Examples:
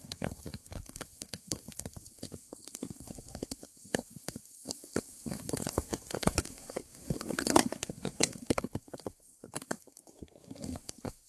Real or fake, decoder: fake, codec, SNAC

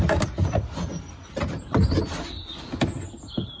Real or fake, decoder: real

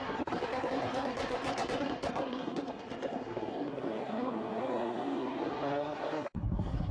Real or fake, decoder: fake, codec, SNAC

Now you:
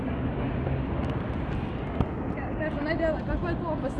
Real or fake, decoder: real